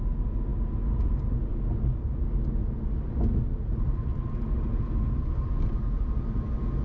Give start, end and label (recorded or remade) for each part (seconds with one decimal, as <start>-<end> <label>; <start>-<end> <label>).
0.0-6.8 recorded